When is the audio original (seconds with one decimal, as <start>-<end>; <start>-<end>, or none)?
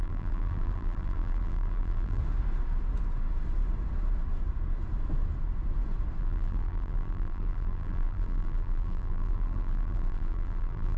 2.2-6.2